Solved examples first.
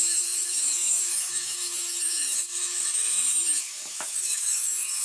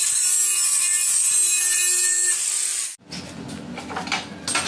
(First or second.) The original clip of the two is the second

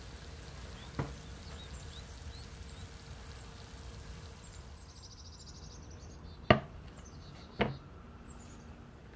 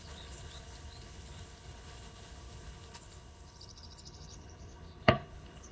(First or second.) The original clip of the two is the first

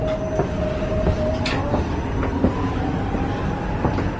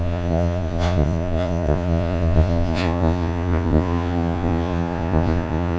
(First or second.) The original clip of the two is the first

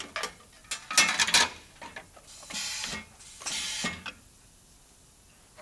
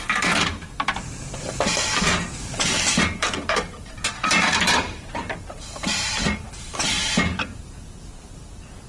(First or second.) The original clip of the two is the first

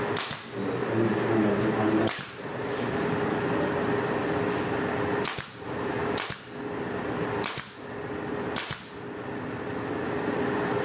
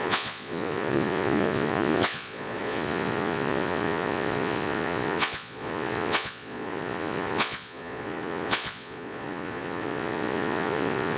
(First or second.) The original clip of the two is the first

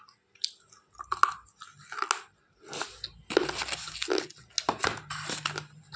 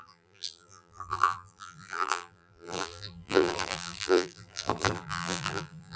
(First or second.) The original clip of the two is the first